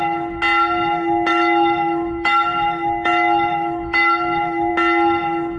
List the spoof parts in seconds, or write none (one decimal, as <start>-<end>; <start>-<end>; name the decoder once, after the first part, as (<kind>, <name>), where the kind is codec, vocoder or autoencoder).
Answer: 1.3-4.7 (autoencoder, DAC-VAE)